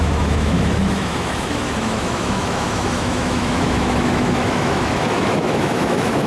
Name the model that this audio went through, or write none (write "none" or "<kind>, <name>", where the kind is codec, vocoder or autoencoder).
autoencoder, DAC-VAE